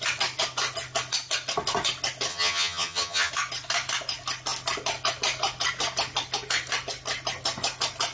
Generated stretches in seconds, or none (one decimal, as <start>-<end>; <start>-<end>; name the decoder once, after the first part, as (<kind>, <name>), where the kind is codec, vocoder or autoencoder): 2.3-3.3 (vocoder, HiFi-GAN)